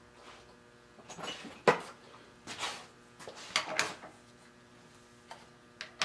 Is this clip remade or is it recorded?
recorded